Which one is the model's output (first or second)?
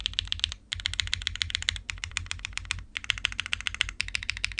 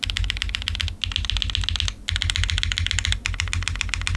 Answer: first